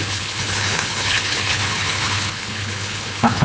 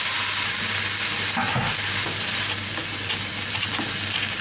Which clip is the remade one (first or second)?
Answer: first